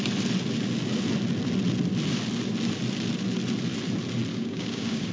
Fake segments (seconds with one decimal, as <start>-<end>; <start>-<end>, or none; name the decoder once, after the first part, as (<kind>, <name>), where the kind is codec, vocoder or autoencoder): 4.3-5.1 (codec, DAC)